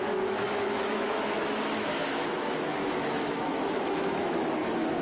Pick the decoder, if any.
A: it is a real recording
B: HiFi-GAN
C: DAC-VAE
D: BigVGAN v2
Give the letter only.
C